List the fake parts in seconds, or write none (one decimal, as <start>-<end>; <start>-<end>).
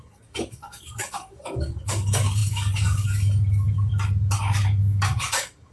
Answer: 0.0-5.7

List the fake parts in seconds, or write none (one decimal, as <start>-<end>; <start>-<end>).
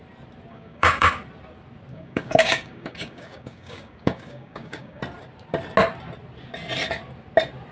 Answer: 0.5-1.2; 1.9-5.0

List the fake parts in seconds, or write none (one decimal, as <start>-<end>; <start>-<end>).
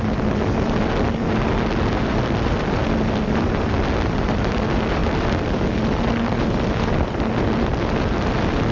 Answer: none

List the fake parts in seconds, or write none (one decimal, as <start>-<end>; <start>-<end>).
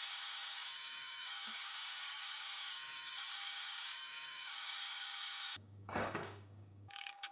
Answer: 0.0-7.3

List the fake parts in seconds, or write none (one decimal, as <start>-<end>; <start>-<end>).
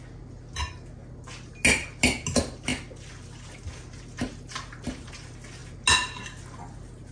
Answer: none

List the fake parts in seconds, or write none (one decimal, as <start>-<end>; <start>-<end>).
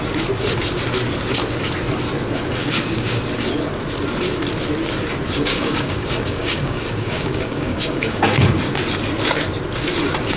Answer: 2.6-3.2; 5.5-8.6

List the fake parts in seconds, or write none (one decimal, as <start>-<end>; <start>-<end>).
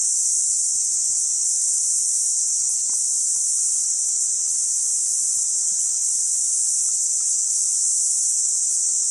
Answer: none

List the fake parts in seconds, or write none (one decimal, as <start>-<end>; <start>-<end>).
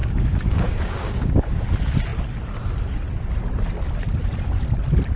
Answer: 0.0-1.6